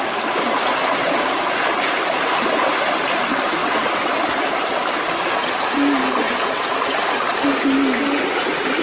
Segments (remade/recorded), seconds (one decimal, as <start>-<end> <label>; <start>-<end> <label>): 0.0-3.6 recorded; 3.6-4.1 remade; 4.1-8.8 recorded